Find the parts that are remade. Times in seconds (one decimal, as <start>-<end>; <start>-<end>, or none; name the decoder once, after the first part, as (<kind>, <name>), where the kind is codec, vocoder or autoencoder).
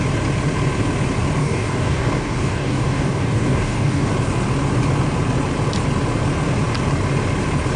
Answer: 1.4-4.1 (codec, DAC)